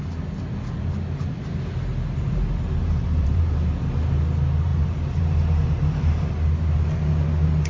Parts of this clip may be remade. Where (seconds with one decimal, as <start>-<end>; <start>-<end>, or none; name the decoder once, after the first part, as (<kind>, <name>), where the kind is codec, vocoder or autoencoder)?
2.8-3.6 (vocoder, BigVGAN v2); 4.7-6.3

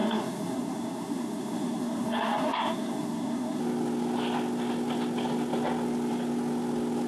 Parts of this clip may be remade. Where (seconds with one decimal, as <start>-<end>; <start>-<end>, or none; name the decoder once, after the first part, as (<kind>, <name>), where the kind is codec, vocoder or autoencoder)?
0.0-3.6 (codec, SNAC)

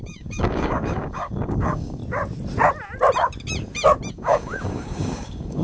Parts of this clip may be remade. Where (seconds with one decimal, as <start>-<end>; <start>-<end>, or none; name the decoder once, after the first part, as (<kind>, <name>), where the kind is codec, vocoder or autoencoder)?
0.0-2.0 (codec, DAC); 4.1-5.6

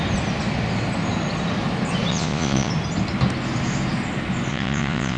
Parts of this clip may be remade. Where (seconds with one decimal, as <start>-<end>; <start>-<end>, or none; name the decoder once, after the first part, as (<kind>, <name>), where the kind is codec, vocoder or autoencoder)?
2.1-2.7 (vocoder, Vocos); 4.5-5.2

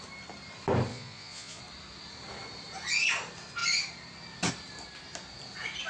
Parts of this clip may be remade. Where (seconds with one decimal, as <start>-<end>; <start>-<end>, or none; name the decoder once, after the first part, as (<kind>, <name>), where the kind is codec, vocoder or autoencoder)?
0.9-1.6 (vocoder, Vocos)